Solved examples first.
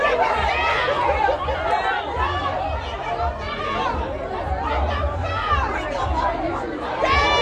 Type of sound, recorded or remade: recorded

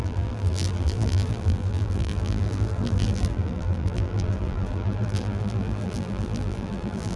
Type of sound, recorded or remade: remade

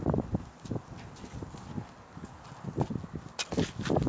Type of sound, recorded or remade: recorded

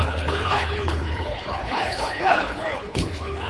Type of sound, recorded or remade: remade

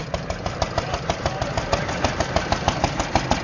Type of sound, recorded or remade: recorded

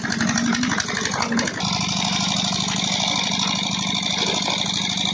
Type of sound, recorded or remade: recorded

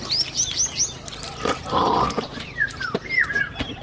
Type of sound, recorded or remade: recorded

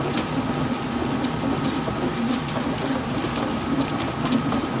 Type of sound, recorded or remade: recorded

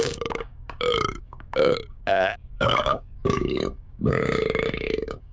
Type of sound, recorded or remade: remade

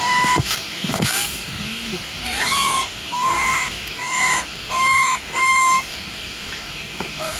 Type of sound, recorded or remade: remade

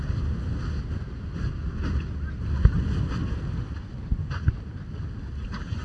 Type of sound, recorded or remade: recorded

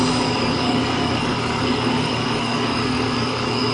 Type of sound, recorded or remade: remade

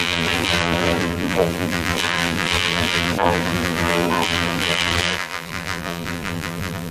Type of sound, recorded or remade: remade